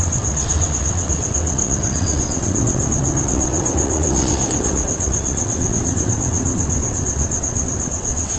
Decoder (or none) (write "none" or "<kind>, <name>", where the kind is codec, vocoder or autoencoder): vocoder, WaveNeXt